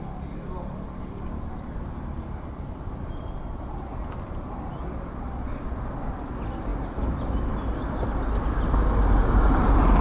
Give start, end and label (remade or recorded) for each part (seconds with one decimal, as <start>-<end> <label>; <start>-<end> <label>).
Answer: 0.0-3.9 remade; 3.9-5.1 recorded; 5.1-10.0 remade